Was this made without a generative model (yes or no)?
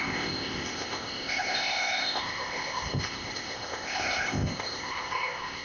no